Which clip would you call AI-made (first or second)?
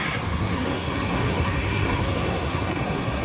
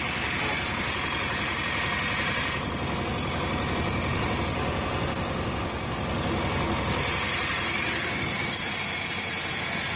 first